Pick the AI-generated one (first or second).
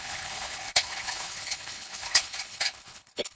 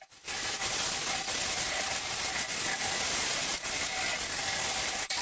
first